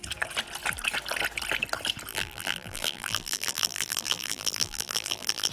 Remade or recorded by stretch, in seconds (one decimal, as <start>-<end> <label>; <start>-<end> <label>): 0.0-2.1 recorded; 2.1-5.5 remade